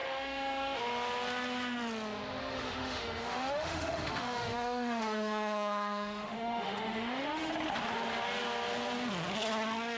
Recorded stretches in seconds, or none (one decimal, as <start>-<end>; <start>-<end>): 0.8-2.4; 7.5-10.0